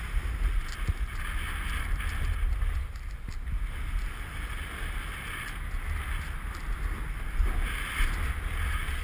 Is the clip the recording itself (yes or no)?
yes